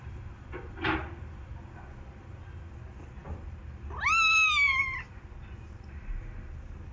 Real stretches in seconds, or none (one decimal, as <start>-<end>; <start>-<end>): 0.0-6.9